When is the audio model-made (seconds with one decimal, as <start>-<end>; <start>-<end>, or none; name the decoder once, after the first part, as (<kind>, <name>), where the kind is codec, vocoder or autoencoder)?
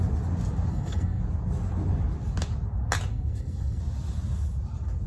0.7-1.2 (codec, SNAC); 3.1-3.8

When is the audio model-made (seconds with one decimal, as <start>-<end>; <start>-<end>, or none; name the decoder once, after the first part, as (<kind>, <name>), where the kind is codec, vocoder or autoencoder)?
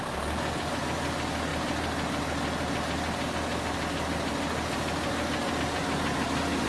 none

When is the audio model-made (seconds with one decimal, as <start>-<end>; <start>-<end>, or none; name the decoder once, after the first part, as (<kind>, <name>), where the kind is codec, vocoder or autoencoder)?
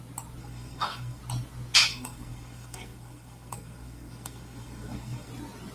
0.4-1.2 (codec, SNAC); 1.9-5.3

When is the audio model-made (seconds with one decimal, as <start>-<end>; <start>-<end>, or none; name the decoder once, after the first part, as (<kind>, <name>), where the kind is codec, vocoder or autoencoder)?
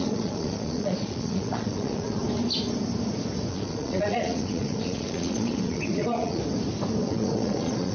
0.0-2.2 (vocoder, Vocos); 3.5-6.4; 7.0-7.9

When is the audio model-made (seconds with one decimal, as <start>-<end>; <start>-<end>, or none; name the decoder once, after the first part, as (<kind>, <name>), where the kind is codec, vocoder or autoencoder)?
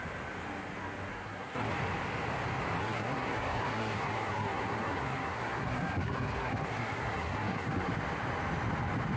1.1-1.7 (codec, SNAC); 2.8-7.9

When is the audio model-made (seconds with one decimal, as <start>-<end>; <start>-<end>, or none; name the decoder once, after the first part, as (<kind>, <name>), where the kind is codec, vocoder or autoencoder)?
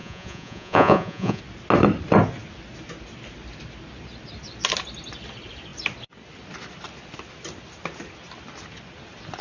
0.0-1.4 (vocoder, Vocos)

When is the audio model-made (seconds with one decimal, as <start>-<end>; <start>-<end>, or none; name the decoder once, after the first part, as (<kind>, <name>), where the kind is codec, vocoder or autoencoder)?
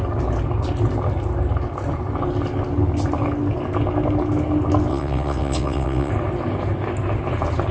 4.9-6.1 (vocoder, WaveNeXt)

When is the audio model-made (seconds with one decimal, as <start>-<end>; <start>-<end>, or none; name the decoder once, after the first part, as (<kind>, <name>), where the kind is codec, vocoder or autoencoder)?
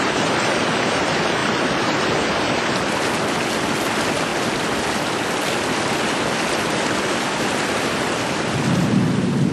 1.4-3.1 (vocoder, BigVGAN v2)